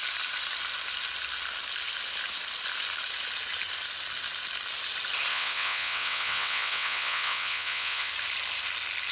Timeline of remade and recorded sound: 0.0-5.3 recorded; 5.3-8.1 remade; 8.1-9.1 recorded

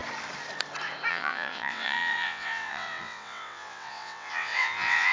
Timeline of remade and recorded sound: 0.0-1.1 recorded; 1.1-5.1 remade

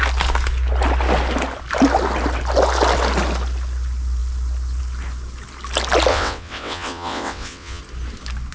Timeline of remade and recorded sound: 0.0-6.1 recorded; 6.1-7.8 remade; 7.8-8.5 recorded

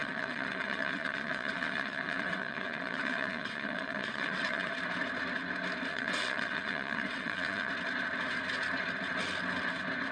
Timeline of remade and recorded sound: 0.0-4.7 remade; 4.7-5.9 recorded; 5.9-7.7 remade; 7.7-10.1 recorded

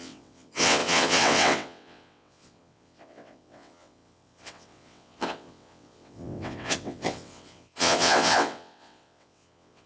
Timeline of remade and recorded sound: 0.0-9.9 remade

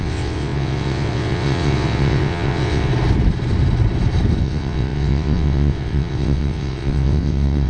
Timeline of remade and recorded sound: 0.0-2.9 remade; 2.9-4.4 recorded; 4.4-7.7 remade